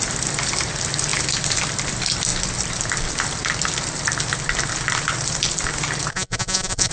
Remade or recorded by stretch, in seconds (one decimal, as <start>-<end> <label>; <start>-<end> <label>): 0.0-6.1 recorded; 6.1-6.9 remade